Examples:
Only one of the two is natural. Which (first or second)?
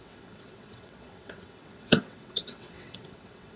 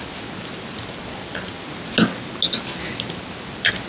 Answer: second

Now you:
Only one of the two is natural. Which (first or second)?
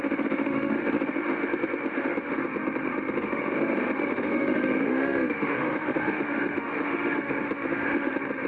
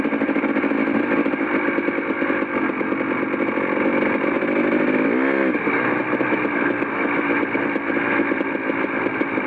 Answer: second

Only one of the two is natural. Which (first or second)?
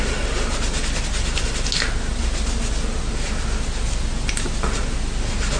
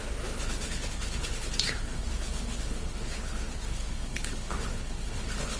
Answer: first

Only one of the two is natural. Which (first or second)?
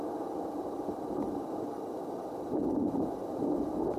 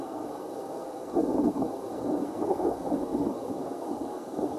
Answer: first